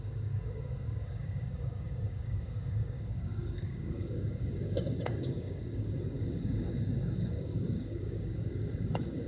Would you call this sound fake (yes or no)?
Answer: yes